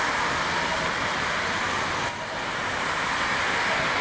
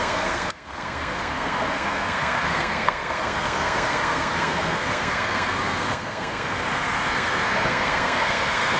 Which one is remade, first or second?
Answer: second